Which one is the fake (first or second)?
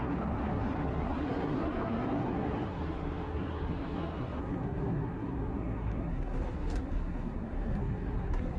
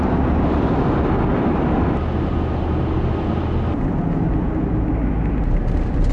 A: first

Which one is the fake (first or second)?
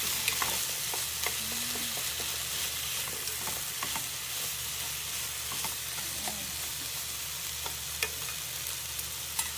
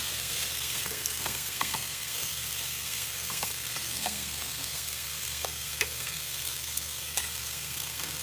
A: second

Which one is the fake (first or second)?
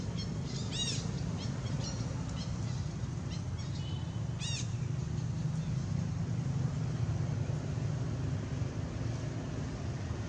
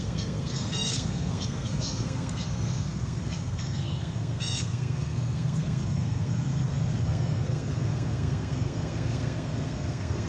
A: second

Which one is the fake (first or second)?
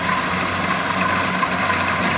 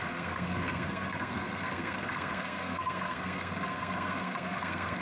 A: second